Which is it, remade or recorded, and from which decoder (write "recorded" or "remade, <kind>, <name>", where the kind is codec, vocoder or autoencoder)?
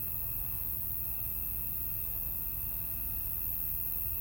recorded